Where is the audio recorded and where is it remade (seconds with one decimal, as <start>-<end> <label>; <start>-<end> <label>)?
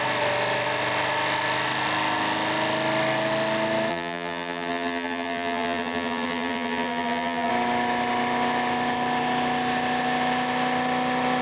0.0-3.9 recorded; 3.9-7.5 remade; 7.5-11.4 recorded